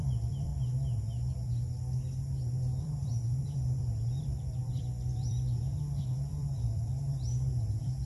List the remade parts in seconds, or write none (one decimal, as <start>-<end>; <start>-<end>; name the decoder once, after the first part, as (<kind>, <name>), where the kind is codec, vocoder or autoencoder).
0.0-0.5 (vocoder, BigVGAN v2); 2.8-8.1